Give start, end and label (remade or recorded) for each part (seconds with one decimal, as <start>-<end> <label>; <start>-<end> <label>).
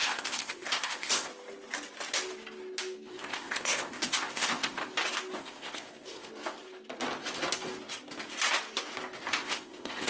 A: 0.0-1.3 remade; 1.3-3.1 recorded; 3.1-4.8 remade; 4.8-5.4 recorded; 5.4-6.3 remade; 6.3-9.4 recorded; 9.4-10.1 remade